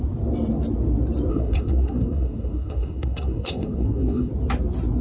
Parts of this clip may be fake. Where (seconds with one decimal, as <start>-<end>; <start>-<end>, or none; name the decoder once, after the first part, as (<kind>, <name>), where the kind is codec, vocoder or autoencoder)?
1.3-4.3 (codec, SNAC)